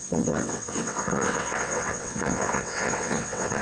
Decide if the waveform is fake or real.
fake